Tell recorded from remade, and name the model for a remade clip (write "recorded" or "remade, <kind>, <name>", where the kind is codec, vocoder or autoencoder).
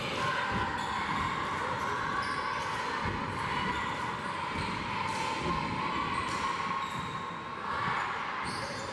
recorded